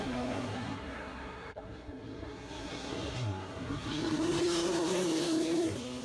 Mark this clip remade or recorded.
remade